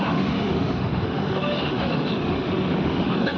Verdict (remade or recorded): remade